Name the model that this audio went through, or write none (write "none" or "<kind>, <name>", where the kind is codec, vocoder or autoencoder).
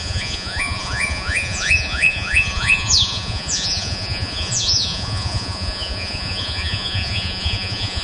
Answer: vocoder, Vocos